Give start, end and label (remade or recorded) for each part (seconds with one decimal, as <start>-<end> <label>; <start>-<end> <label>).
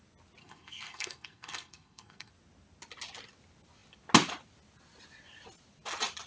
0.0-0.4 recorded; 0.4-2.3 remade; 2.3-6.3 recorded